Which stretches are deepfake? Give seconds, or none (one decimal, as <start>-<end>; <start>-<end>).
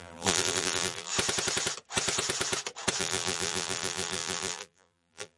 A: 0.0-1.1; 3.0-5.4